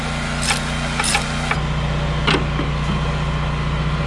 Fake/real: real